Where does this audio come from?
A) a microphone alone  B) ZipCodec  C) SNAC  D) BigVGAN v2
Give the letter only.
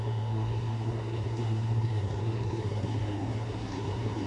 C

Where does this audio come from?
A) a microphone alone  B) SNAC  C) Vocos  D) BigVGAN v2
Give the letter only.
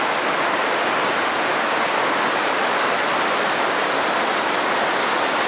A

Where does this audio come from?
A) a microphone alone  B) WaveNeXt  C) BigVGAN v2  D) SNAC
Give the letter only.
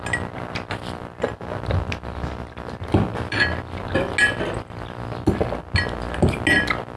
A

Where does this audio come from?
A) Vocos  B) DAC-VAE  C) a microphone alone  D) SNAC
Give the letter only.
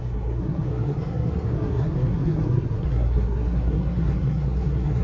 D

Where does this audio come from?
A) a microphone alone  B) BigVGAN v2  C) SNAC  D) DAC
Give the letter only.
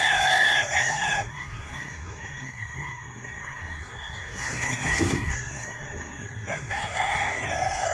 C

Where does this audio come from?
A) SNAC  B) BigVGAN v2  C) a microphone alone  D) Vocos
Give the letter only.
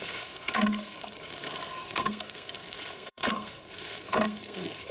A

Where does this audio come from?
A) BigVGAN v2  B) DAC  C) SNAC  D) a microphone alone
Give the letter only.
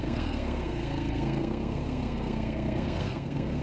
C